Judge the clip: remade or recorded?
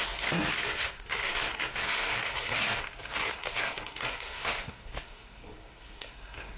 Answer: remade